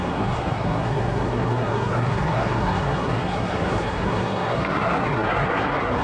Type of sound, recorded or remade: remade